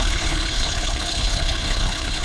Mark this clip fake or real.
fake